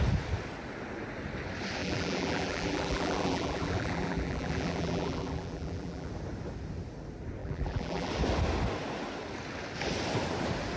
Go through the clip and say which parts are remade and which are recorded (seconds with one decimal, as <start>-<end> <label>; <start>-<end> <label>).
0.0-1.8 recorded; 1.8-6.1 remade; 6.1-7.4 recorded; 7.4-8.1 remade; 8.1-10.8 recorded

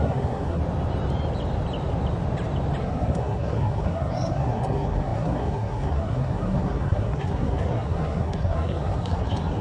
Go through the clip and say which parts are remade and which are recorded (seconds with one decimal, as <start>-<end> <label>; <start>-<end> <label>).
0.0-0.6 remade; 0.6-2.8 recorded; 2.8-9.6 remade

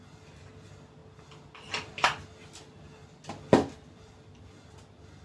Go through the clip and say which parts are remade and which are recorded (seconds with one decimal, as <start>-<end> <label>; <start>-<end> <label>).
0.0-5.2 recorded

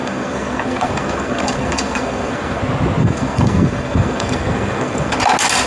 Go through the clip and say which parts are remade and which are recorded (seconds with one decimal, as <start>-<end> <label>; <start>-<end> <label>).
0.0-2.6 remade; 2.6-3.0 recorded; 3.0-5.2 remade; 5.2-5.7 recorded

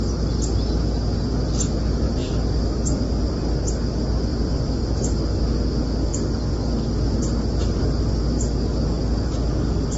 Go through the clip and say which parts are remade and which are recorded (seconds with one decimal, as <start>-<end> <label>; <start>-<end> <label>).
0.0-2.2 recorded; 2.2-3.4 remade; 3.4-4.3 recorded; 4.3-5.4 remade; 5.4-10.0 recorded